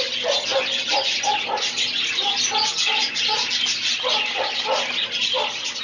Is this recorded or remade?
recorded